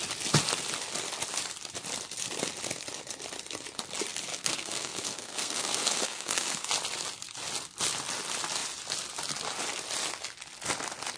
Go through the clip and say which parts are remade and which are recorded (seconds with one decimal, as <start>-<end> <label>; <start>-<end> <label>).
0.0-4.3 recorded; 4.3-6.7 remade; 6.7-11.2 recorded